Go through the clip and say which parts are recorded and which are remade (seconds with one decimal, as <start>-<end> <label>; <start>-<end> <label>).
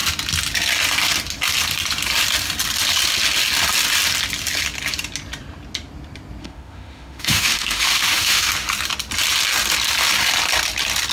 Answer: 0.0-6.4 recorded; 6.4-8.5 remade; 8.5-11.1 recorded